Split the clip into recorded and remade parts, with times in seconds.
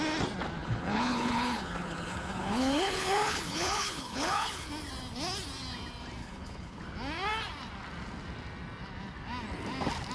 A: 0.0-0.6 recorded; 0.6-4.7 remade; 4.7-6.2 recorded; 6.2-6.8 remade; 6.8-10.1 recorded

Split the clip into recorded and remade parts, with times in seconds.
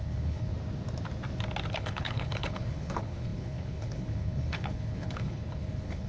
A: 0.0-0.5 remade; 0.5-1.7 recorded; 1.7-6.1 remade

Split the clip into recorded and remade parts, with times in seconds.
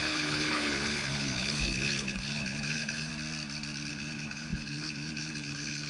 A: 0.0-3.1 remade; 3.1-3.9 recorded; 3.9-5.9 remade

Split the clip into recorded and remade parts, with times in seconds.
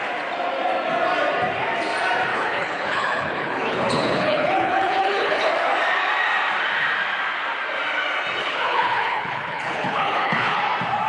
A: 0.0-2.3 recorded; 2.3-5.5 remade; 5.5-8.4 recorded; 8.4-10.6 remade; 10.6-11.1 recorded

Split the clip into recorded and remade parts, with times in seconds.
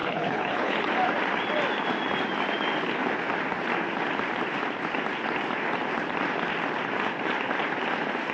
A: 0.0-0.9 remade; 0.9-8.3 recorded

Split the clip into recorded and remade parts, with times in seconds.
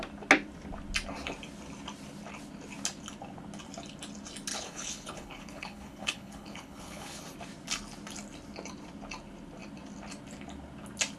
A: 0.0-4.5 recorded; 4.5-7.2 remade; 7.2-11.2 recorded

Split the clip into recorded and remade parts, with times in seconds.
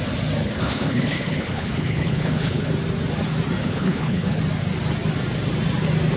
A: 0.0-0.4 recorded; 0.4-2.7 remade; 2.7-3.6 recorded; 3.6-4.4 remade; 4.4-6.2 recorded